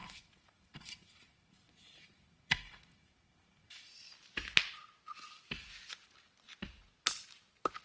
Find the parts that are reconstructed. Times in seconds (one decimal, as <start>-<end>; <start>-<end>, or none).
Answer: 0.0-3.9